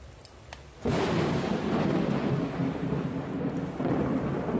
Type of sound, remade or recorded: recorded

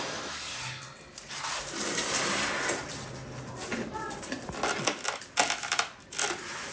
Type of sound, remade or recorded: recorded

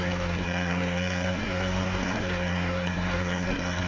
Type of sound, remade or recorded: remade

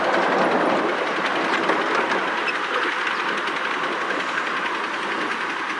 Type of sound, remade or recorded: recorded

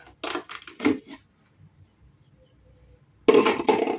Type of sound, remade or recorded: recorded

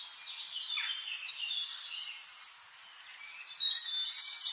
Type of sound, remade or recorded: recorded